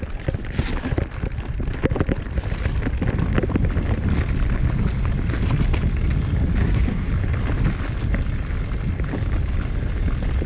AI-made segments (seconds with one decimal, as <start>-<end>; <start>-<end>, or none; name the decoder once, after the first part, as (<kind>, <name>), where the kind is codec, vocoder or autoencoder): 6.6-7.1 (codec, SNAC)